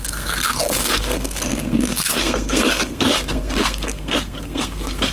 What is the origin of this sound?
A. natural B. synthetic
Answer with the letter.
B